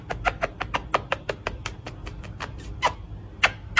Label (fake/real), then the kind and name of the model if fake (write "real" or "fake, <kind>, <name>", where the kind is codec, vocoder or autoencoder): real